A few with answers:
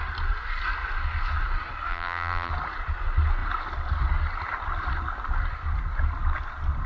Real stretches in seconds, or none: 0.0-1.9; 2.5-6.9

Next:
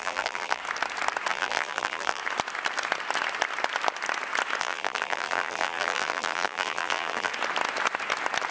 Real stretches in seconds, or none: 0.6-1.3; 2.2-4.6; 7.3-8.5

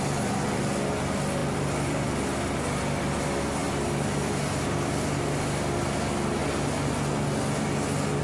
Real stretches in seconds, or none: 0.0-8.2

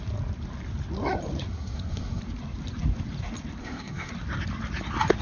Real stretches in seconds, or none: 0.0-1.5; 2.2-3.6; 4.1-5.2

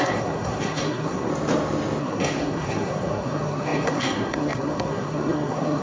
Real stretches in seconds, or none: 1.3-2.0

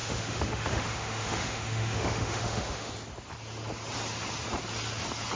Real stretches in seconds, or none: 2.9-5.4